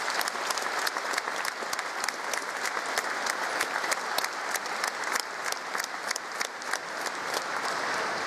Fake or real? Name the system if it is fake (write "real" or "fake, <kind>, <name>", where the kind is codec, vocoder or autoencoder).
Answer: real